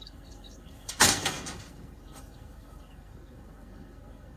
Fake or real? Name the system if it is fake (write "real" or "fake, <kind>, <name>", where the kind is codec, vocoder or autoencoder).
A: fake, codec, SNAC